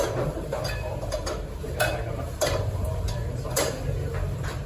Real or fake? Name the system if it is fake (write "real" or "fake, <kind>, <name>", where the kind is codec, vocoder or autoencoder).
fake, vocoder, BigVGAN v2